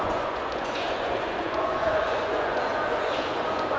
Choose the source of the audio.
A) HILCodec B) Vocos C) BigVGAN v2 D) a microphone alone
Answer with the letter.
B